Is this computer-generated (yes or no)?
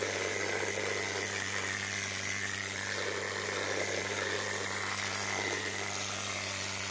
yes